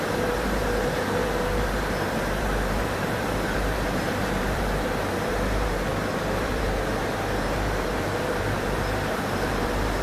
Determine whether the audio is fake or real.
fake